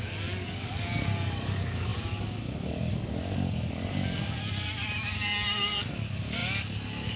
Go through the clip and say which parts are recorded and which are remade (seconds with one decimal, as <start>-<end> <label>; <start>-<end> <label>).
0.0-7.2 remade